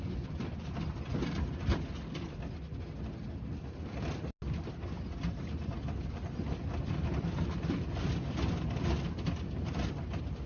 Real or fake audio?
real